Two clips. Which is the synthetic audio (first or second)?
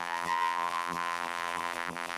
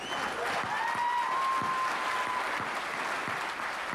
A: first